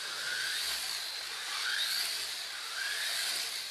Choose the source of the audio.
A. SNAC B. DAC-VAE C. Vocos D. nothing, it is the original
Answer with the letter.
D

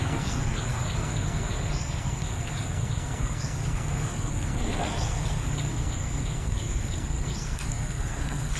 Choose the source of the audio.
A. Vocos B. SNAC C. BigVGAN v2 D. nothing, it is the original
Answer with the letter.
B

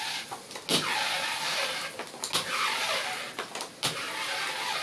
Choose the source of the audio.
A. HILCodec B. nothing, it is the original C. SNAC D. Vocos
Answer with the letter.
B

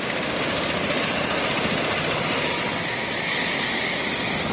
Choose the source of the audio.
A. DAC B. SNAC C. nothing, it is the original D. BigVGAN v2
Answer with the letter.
C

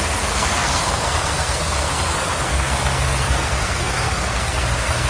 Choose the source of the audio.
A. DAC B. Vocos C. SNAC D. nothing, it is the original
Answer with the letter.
C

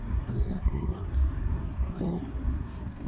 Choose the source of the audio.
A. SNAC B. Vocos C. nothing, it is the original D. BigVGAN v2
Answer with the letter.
A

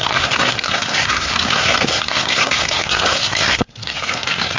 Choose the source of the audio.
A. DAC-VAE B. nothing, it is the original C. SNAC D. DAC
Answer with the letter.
C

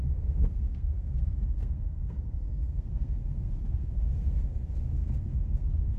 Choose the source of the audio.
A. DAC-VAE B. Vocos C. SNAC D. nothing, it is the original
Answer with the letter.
C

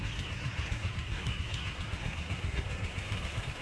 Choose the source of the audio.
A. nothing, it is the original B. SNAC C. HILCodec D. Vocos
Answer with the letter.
B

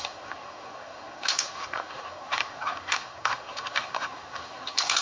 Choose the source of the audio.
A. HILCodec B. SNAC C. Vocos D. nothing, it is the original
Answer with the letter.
B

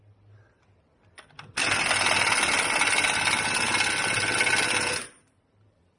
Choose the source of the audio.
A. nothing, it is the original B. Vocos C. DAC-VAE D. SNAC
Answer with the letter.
A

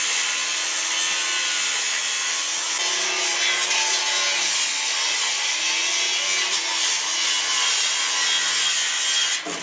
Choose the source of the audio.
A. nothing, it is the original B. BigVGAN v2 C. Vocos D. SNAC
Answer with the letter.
A